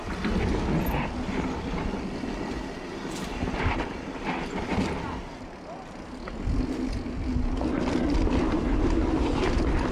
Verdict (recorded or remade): recorded